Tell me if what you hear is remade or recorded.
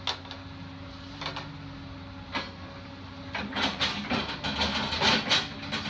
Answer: recorded